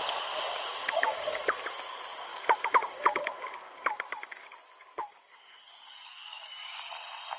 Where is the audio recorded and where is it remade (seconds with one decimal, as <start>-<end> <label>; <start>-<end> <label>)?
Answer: 0.0-0.8 recorded; 0.8-1.6 remade; 1.6-2.3 recorded; 2.3-4.5 remade; 4.5-5.0 recorded; 5.0-6.9 remade; 6.9-7.4 recorded